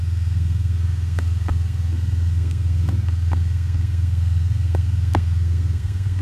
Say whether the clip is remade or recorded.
remade